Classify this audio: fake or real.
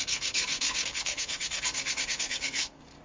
fake